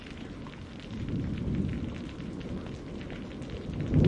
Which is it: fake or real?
real